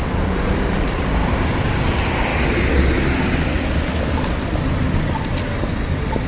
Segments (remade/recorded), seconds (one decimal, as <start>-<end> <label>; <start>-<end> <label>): 0.0-6.3 recorded